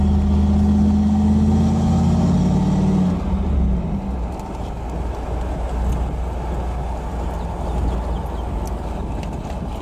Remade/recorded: recorded